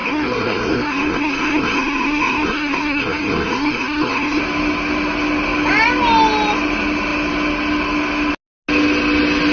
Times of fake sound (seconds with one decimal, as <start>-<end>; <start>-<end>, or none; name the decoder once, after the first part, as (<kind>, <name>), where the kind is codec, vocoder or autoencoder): 0.0-4.4 (codec, SNAC)